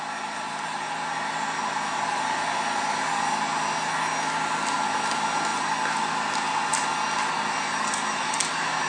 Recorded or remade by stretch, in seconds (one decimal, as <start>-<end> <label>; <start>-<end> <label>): 0.0-8.9 recorded